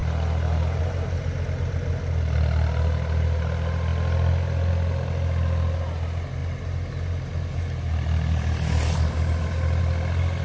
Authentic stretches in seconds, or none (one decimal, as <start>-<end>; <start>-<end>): 0.0-10.4

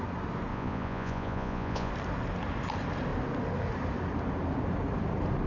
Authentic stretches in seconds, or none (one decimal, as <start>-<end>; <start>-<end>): 0.0-0.5; 1.9-5.5

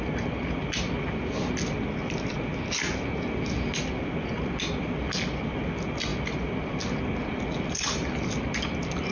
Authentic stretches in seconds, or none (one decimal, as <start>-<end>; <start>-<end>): 0.0-9.1

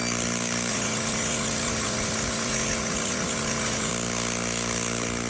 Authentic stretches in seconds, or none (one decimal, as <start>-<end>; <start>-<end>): 0.0-0.7; 3.9-5.3

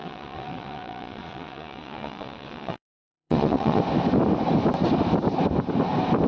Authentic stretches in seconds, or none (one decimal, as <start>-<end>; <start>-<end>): 3.8-6.3

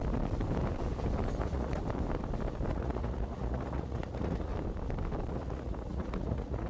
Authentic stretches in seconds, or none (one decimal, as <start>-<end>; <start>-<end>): 0.0-1.4; 1.8-2.7; 4.5-5.3

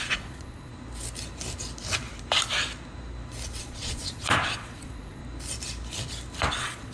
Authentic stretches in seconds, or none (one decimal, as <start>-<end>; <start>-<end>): 0.7-3.6; 5.2-6.5